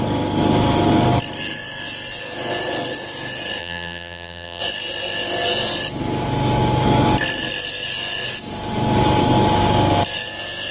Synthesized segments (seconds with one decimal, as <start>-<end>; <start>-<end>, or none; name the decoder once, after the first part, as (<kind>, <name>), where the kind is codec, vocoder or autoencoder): 3.6-4.6 (vocoder, BigVGAN v2)